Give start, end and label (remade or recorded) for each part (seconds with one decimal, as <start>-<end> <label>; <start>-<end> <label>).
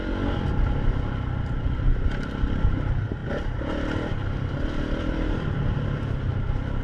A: 0.0-6.8 recorded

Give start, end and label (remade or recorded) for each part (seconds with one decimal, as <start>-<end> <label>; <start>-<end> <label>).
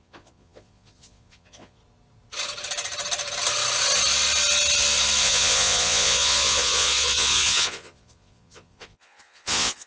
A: 0.0-1.8 remade; 1.8-5.2 recorded; 5.2-9.9 remade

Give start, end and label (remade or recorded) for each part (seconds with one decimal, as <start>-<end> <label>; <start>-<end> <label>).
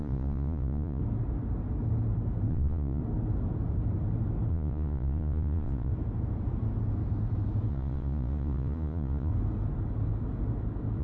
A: 0.0-1.0 remade; 1.0-2.5 recorded; 2.5-3.0 remade; 3.0-4.5 recorded; 4.5-5.9 remade; 5.9-7.7 recorded; 7.7-9.3 remade; 9.3-11.0 recorded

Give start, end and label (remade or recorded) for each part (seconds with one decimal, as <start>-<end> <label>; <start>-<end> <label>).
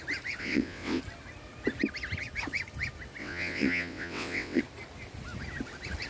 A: 0.0-0.4 recorded; 0.4-1.0 remade; 1.0-3.2 recorded; 3.2-4.6 remade; 4.6-6.1 recorded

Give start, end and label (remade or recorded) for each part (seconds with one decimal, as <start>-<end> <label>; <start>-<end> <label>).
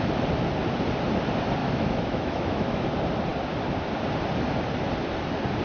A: 0.0-1.6 recorded; 1.6-2.9 remade; 2.9-5.6 recorded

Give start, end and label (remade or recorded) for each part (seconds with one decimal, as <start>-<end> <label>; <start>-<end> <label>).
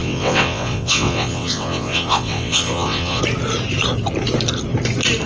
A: 0.0-3.2 remade; 3.2-5.3 recorded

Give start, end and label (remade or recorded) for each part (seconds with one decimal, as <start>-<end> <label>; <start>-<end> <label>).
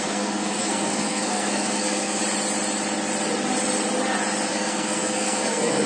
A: 0.0-2.2 remade; 2.2-4.5 recorded; 4.5-5.9 remade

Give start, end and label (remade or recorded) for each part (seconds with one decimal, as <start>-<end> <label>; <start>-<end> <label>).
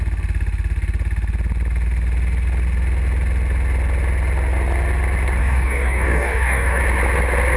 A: 0.0-5.4 recorded; 5.4-6.8 remade; 6.8-7.6 recorded